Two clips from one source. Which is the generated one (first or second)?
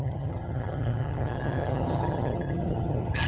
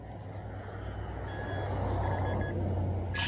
first